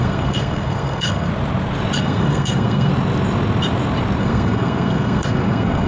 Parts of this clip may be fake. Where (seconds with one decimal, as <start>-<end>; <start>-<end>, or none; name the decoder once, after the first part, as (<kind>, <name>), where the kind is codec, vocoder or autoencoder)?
0.0-1.3 (codec, SNAC); 2.0-2.9; 4.2-5.9